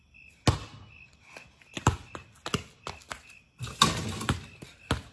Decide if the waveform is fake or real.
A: real